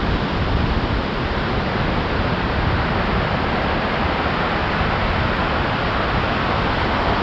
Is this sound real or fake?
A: real